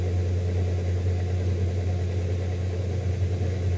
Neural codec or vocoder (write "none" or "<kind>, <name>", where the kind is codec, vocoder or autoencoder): none